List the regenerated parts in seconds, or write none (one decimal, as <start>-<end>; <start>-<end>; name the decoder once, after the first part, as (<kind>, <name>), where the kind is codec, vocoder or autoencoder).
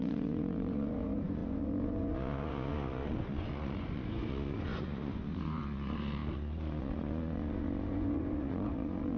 0.0-9.2 (vocoder, Vocos)